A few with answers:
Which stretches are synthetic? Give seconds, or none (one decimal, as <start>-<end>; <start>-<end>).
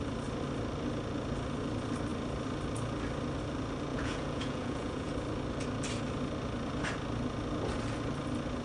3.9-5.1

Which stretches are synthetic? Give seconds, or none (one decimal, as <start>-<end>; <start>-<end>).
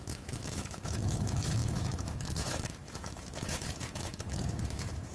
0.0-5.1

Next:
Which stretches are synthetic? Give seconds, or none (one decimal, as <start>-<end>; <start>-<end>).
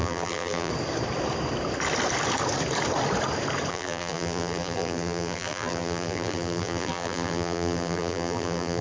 0.0-0.7; 3.7-8.8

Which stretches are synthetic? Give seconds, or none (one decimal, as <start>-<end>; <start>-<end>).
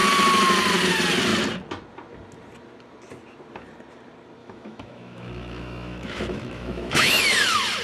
4.4-7.2